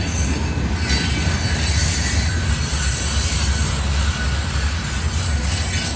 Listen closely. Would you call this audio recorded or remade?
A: recorded